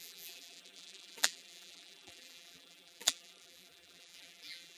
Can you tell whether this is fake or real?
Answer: fake